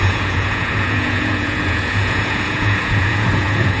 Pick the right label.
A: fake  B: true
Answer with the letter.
A